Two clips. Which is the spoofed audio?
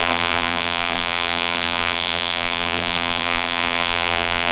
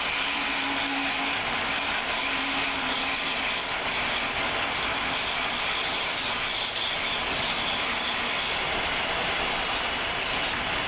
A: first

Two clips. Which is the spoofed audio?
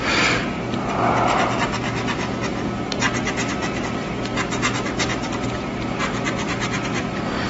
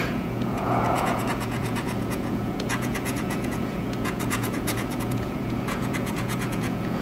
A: second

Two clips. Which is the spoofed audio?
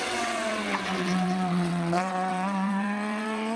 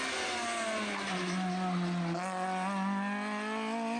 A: first